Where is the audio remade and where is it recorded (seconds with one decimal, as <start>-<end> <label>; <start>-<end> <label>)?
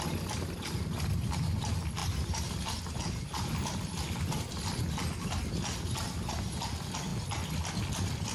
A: 0.0-8.3 recorded